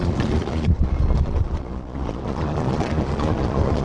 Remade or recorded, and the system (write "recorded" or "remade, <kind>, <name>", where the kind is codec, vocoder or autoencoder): remade, vocoder, Vocos